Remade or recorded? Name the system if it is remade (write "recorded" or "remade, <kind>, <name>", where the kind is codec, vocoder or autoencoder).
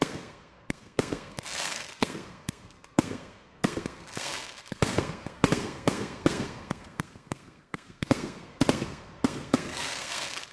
remade, codec, SNAC